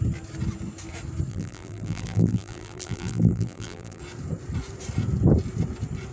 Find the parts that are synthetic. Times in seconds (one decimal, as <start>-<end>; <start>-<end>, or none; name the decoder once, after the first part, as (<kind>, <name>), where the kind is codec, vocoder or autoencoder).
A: 1.3-4.0 (vocoder, BigVGAN v2)